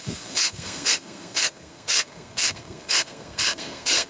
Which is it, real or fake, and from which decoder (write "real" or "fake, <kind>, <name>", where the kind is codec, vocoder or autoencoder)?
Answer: fake, codec, SNAC